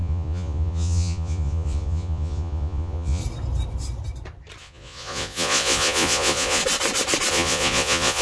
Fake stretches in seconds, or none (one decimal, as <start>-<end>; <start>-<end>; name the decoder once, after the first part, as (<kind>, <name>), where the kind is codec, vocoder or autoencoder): 0.0-3.2 (vocoder, Vocos); 4.6-6.6; 7.3-8.2